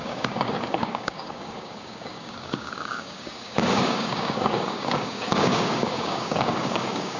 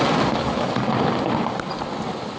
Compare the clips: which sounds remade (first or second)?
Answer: first